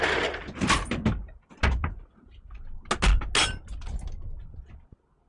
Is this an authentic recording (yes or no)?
yes